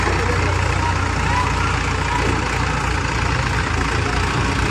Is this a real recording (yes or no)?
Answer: yes